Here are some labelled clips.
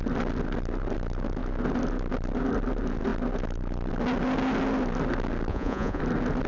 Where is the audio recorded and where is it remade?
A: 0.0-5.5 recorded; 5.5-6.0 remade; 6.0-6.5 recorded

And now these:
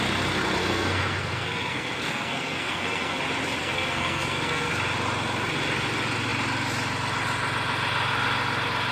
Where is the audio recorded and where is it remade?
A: 0.0-0.6 recorded; 0.6-3.2 remade; 3.2-3.6 recorded; 3.6-4.7 remade; 4.7-8.9 recorded

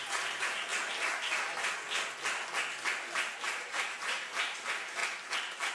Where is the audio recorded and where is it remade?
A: 0.0-0.7 remade; 0.7-3.4 recorded; 3.4-5.0 remade; 5.0-5.7 recorded

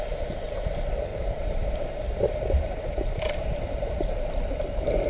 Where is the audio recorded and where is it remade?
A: 0.0-1.1 recorded; 1.1-4.1 remade; 4.1-5.1 recorded